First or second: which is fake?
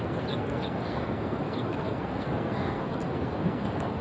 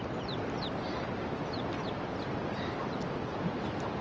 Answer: first